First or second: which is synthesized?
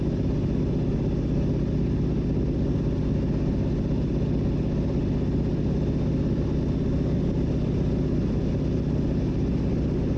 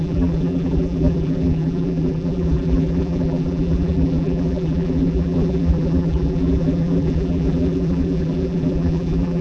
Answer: second